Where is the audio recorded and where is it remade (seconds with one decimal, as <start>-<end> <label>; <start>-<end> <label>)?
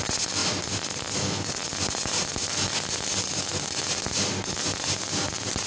0.0-5.7 recorded